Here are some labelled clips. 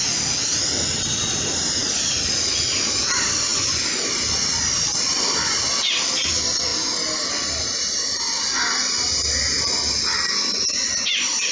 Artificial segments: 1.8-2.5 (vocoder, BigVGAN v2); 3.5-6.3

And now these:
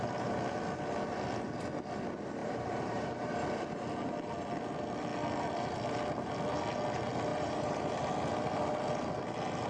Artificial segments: 2.4-3.3 (vocoder, BigVGAN v2); 7.3-7.9

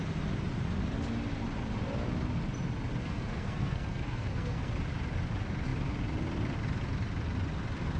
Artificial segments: 3.0-4.7 (codec, SNAC)